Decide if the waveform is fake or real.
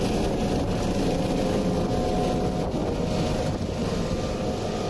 real